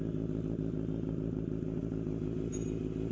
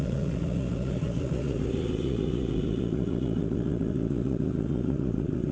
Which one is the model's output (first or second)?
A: second